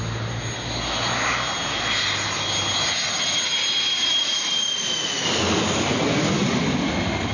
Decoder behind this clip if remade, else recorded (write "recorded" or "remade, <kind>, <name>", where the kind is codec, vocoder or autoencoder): recorded